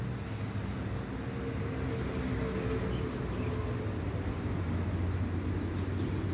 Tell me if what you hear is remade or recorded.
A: recorded